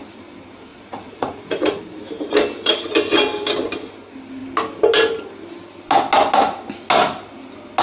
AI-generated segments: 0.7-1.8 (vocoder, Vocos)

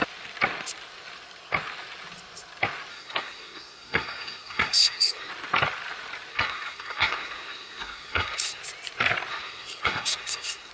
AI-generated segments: 2.9-5.3 (codec, SNAC); 6.3-8.6; 9.3-10.7

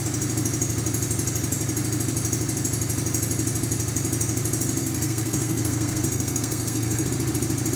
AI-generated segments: 4.8-7.1 (codec, SNAC)